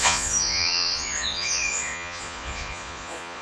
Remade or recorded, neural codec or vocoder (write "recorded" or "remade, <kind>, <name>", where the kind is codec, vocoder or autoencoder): remade, vocoder, Vocos